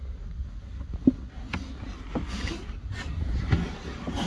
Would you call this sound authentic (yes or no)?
yes